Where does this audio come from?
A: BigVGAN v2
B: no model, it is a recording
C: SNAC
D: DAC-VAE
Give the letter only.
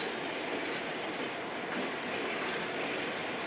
B